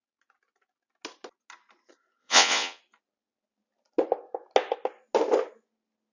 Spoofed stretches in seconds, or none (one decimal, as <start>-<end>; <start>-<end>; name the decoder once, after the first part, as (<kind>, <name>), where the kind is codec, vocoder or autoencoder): 2.2-2.8 (vocoder, WaveNeXt)